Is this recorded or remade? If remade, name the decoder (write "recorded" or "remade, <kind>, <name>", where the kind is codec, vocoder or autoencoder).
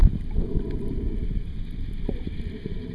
recorded